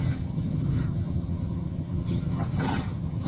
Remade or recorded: remade